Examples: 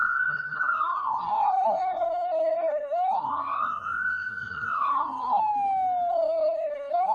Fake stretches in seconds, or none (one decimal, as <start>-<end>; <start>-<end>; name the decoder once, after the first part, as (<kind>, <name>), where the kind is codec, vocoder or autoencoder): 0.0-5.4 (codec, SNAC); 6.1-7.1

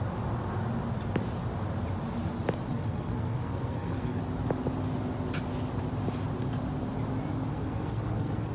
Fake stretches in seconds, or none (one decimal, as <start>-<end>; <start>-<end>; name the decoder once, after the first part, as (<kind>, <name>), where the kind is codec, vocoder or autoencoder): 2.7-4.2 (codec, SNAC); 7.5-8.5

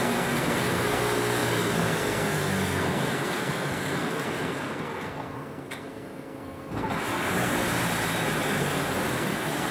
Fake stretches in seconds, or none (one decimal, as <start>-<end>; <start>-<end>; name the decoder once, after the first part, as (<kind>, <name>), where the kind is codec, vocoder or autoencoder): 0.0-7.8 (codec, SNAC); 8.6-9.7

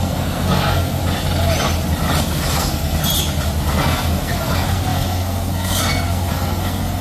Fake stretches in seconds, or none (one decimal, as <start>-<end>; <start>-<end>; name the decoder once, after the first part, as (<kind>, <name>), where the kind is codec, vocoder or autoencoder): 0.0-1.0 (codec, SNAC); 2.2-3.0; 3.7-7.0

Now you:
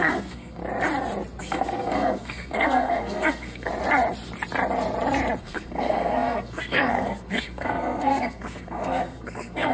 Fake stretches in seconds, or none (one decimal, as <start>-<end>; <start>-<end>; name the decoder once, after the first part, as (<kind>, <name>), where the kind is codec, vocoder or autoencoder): 0.0-0.6 (codec, SNAC); 1.4-3.7; 5.4-9.7